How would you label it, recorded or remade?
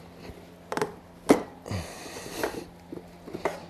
recorded